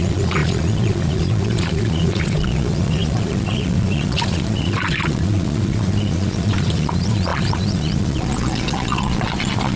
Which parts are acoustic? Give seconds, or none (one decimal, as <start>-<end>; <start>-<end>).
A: none